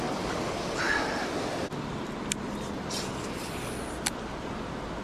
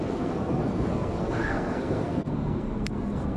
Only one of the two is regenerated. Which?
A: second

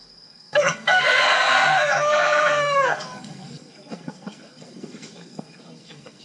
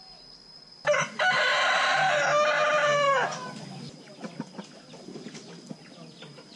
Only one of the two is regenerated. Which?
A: first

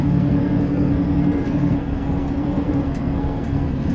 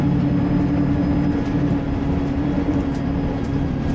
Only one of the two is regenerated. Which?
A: first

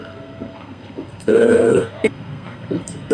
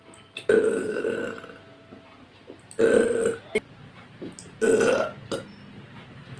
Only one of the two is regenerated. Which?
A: first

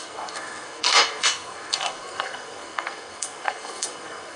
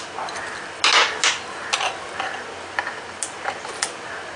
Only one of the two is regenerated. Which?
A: first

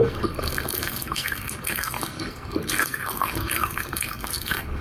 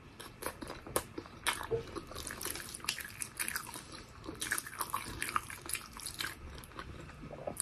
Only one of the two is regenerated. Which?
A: first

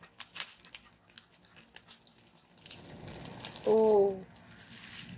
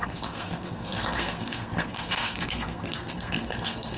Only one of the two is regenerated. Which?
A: second